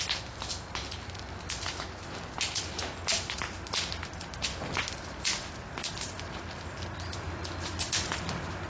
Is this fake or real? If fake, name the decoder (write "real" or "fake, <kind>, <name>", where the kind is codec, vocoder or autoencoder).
real